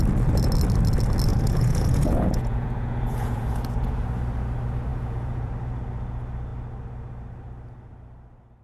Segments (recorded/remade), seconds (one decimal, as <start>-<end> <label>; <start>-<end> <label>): 0.0-1.3 recorded; 1.3-4.1 remade; 4.1-4.9 recorded; 4.9-5.5 remade; 5.5-8.6 recorded